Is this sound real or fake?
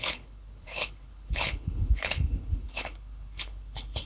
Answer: fake